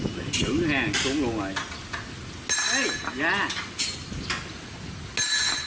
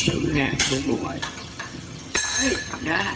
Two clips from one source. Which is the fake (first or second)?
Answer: second